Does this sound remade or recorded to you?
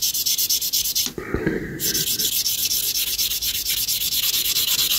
recorded